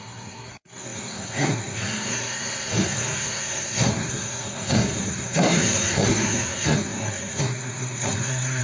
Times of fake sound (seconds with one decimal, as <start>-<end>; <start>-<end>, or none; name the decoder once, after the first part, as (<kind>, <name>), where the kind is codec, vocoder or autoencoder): 0.0-8.6 (codec, SNAC)